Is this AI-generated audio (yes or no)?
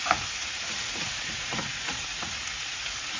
yes